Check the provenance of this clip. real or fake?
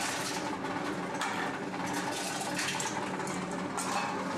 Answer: real